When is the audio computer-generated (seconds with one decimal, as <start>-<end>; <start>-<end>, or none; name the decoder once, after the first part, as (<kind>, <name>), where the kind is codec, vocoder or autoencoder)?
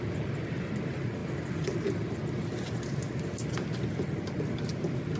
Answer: none